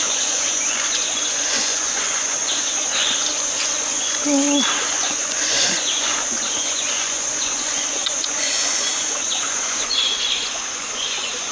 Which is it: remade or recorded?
remade